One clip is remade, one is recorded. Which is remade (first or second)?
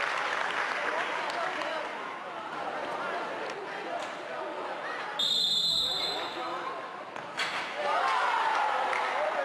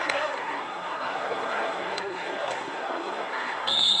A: second